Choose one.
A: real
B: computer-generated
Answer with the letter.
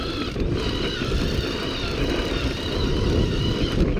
A